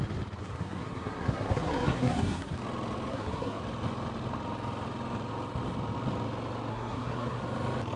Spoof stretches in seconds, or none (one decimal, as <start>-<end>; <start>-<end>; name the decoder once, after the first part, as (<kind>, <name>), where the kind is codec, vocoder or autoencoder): 0.4-2.5 (codec, SNAC); 3.1-3.6; 6.7-7.4